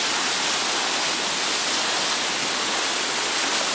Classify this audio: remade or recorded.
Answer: recorded